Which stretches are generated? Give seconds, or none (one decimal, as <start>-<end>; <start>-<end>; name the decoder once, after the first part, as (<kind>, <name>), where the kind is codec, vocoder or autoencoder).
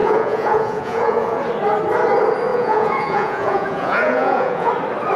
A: 0.0-1.4 (vocoder, Vocos); 2.5-4.7